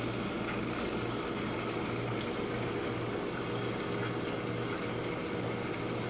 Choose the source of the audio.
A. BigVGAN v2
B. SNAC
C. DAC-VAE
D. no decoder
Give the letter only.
D